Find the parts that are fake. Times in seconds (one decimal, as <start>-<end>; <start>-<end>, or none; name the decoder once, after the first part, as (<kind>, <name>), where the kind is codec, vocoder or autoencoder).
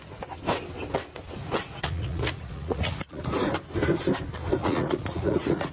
1.6-3.2 (vocoder, Vocos); 4.6-5.7